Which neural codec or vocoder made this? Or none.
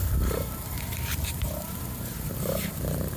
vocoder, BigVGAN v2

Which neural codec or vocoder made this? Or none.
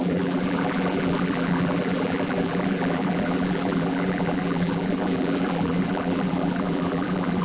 vocoder, BigVGAN v2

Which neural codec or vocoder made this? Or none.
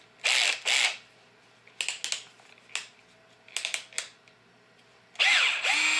none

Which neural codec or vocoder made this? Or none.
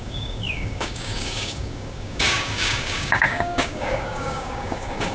codec, DAC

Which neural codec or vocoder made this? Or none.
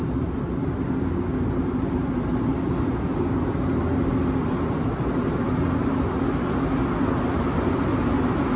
none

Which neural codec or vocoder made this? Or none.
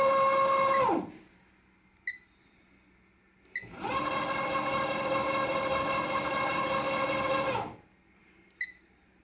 none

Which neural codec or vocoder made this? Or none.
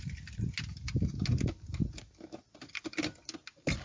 none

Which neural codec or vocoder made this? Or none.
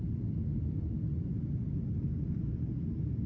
none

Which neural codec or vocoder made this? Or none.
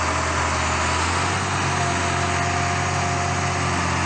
none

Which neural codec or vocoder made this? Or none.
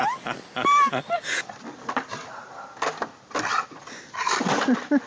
none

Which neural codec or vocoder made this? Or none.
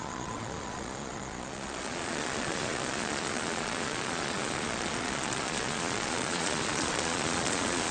vocoder, Vocos